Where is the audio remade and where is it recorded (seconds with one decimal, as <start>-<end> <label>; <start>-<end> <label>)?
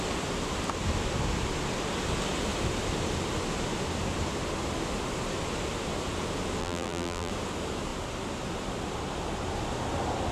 0.0-6.6 recorded; 6.6-7.3 remade; 7.3-10.3 recorded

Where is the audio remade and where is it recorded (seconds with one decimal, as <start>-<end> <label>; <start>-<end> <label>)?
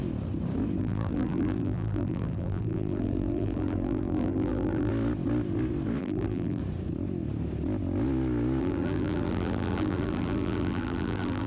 0.0-0.8 recorded; 0.8-4.9 remade; 4.9-6.0 recorded; 6.0-6.6 remade; 6.6-8.6 recorded; 8.6-11.5 remade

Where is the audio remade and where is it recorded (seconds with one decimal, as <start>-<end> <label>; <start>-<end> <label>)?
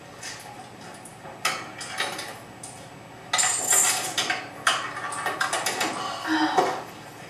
0.0-7.3 recorded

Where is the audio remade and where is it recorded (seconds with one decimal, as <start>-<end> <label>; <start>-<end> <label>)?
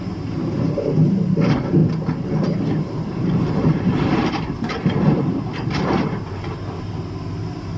0.0-1.8 remade; 1.8-2.8 recorded; 2.8-7.8 remade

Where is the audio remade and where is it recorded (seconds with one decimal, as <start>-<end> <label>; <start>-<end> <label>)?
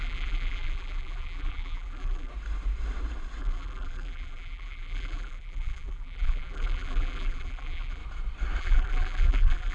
0.0-2.3 remade; 2.3-3.4 recorded; 3.4-8.0 remade; 8.0-8.6 recorded; 8.6-9.7 remade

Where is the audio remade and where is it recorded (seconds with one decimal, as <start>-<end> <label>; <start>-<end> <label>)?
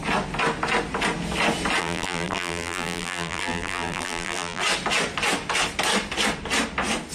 0.0-1.8 recorded; 1.8-4.6 remade; 4.6-7.1 recorded